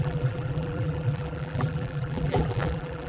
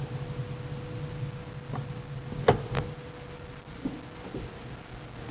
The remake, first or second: first